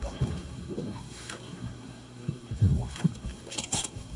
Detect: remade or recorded remade